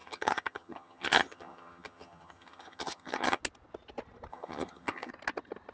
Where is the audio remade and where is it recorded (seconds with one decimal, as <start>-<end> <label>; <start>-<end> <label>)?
0.0-3.4 remade; 3.4-4.3 recorded; 4.3-5.1 remade; 5.1-5.7 recorded